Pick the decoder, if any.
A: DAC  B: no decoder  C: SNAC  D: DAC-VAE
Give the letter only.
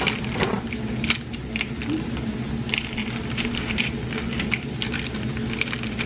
B